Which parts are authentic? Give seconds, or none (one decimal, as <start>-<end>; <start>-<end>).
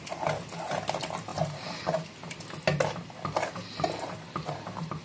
0.0-5.0